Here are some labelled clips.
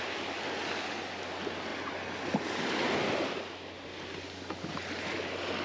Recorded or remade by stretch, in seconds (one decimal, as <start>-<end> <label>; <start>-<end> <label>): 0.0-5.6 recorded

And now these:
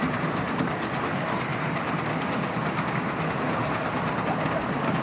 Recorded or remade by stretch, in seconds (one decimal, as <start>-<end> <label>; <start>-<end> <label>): 0.0-5.0 recorded

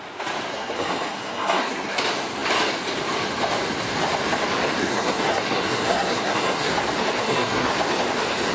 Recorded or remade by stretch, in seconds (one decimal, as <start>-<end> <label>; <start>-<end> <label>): 0.0-0.5 recorded; 0.5-2.0 remade; 2.0-4.8 recorded; 4.8-6.7 remade; 6.7-7.2 recorded; 7.2-7.7 remade; 7.7-8.5 recorded